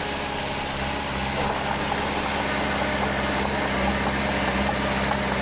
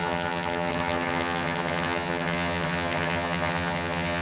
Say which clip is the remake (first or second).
second